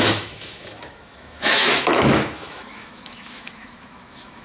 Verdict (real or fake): fake